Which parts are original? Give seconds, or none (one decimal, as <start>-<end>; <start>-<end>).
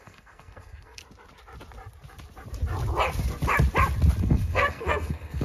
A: 1.0-4.2